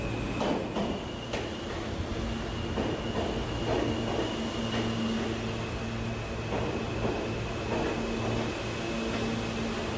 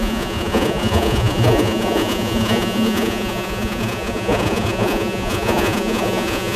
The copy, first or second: second